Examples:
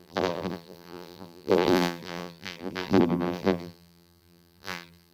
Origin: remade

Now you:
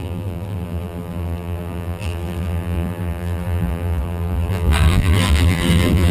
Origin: remade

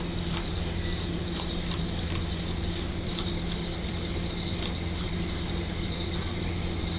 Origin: remade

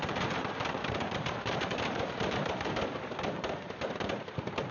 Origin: remade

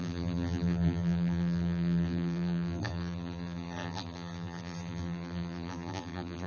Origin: remade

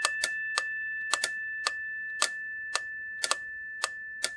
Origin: recorded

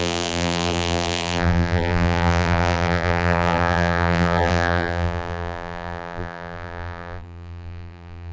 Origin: remade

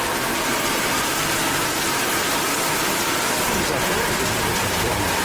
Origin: recorded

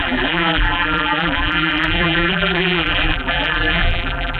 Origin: remade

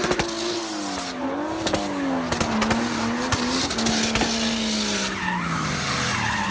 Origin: recorded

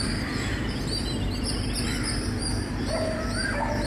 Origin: remade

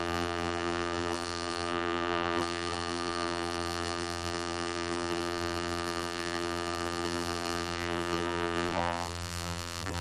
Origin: remade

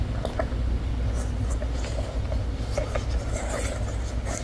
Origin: recorded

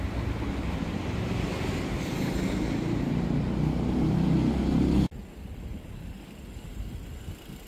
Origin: recorded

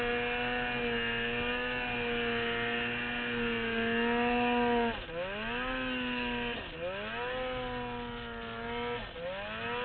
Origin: recorded